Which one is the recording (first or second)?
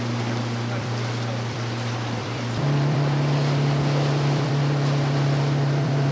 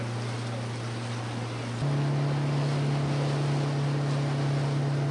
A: second